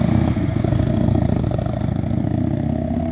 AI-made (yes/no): yes